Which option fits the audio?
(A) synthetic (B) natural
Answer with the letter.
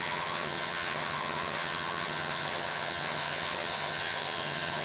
A